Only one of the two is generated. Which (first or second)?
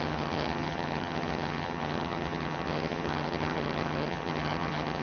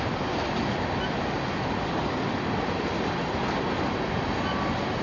first